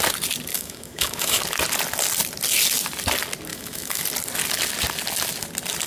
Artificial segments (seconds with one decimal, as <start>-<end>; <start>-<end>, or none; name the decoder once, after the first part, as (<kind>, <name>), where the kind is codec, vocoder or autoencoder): 0.5-1.4 (autoencoder, DAC-VAE); 3.5-4.0